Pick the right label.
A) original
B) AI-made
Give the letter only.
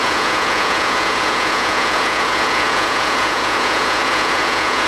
B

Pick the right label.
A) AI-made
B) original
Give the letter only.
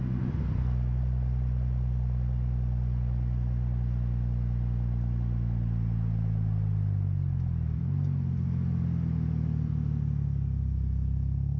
B